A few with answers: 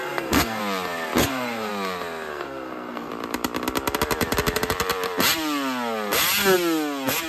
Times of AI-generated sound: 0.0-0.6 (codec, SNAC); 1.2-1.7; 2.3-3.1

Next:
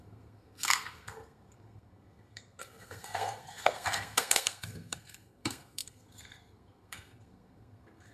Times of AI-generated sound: 0.0-8.1 (codec, SNAC)